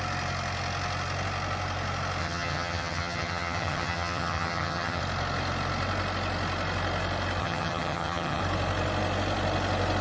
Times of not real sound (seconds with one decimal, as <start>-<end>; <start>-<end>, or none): 2.2-5.0; 7.4-8.4